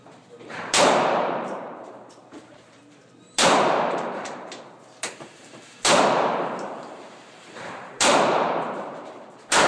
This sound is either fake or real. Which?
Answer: fake